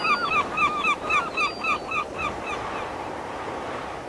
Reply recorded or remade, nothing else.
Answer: recorded